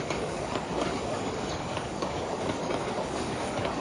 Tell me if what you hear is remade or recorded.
remade